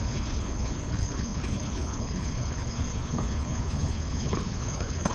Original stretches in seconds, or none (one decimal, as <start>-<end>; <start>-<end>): none

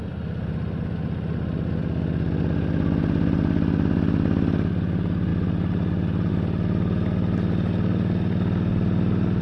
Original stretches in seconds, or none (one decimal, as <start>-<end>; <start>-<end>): 0.0-9.4

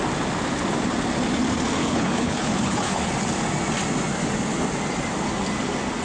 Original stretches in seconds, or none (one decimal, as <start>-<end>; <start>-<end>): 0.0-1.8; 3.0-6.0

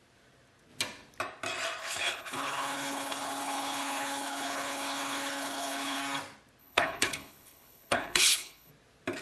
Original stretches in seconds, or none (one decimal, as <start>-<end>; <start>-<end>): 0.0-1.8; 6.0-6.6; 8.7-9.2

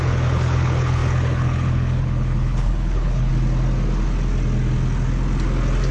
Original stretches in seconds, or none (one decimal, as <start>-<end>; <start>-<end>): 3.3-5.9